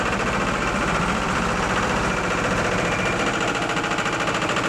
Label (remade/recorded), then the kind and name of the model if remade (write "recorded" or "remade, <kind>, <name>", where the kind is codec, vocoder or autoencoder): remade, vocoder, BigVGAN v2